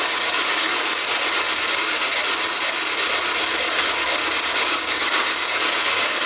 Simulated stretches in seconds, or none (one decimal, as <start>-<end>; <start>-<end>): 0.0-0.7; 1.7-2.1; 4.6-6.3